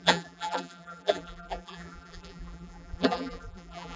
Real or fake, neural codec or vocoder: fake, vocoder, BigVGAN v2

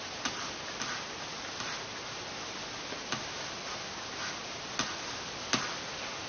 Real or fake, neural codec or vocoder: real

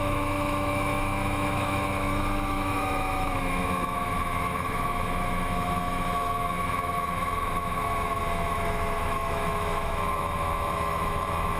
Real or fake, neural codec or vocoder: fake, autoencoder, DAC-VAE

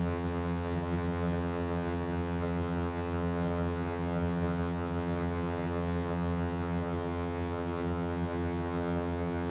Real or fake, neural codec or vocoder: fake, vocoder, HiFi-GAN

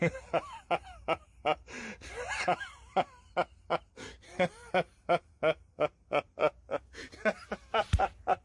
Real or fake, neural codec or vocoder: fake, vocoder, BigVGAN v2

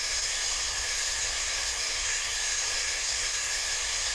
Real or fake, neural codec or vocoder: fake, codec, SNAC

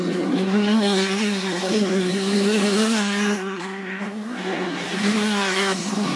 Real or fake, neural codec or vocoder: fake, codec, SNAC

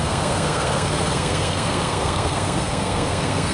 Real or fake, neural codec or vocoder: fake, codec, SNAC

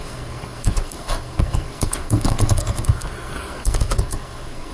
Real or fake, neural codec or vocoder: fake, codec, SNAC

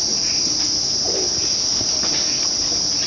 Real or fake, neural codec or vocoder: real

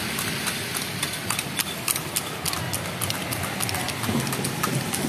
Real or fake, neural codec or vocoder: real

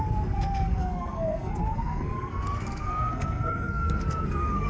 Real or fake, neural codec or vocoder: fake, codec, SNAC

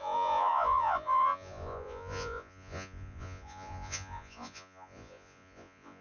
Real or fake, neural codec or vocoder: fake, vocoder, Vocos